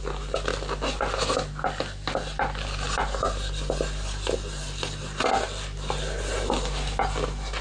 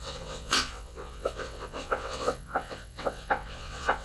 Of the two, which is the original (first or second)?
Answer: first